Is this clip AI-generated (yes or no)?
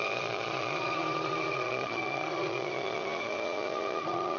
yes